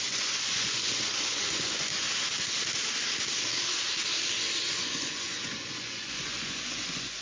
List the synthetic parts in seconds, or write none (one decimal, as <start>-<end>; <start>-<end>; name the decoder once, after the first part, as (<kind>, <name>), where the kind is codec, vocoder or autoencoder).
0.0-1.9 (vocoder, Vocos); 4.7-7.2